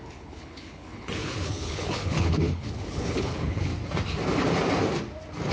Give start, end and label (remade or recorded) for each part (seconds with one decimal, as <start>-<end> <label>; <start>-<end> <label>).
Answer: 0.0-3.7 remade; 3.7-5.5 recorded